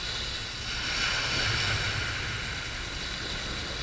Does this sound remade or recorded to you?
recorded